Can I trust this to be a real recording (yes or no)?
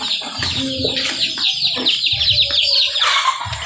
yes